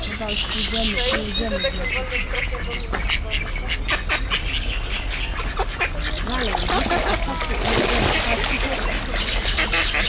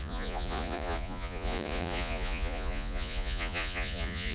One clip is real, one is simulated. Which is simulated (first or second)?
second